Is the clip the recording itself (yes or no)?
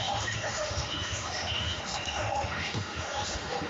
no